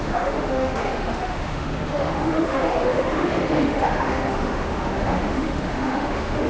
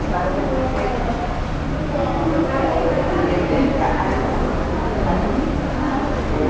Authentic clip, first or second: second